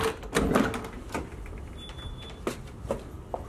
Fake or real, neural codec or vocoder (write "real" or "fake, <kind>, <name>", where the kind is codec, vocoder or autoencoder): real